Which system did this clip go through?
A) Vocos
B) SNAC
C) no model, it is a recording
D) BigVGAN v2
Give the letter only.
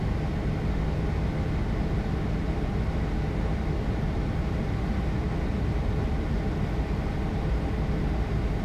C